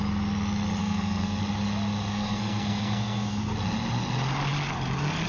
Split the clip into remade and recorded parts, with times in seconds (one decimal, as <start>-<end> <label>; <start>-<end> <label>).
0.0-0.8 recorded; 0.8-1.4 remade; 1.4-2.1 recorded; 2.1-3.4 remade; 3.4-5.3 recorded